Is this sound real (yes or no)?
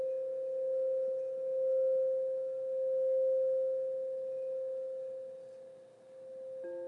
yes